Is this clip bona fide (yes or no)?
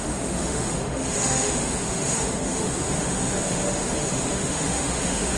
no